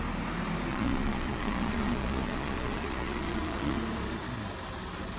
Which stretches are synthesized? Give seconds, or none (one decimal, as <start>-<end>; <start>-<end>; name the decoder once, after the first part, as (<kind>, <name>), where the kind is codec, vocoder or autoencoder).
0.7-3.8 (vocoder, Vocos)